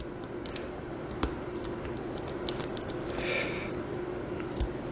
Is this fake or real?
real